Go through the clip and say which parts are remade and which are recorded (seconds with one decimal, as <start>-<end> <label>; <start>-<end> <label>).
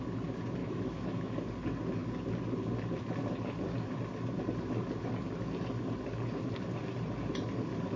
0.0-0.6 recorded; 0.6-1.5 remade; 1.5-8.0 recorded